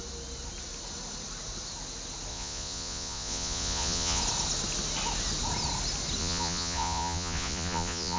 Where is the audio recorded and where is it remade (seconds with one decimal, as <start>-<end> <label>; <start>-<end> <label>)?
0.0-2.3 recorded; 2.3-4.2 remade; 4.2-6.2 recorded; 6.2-8.2 remade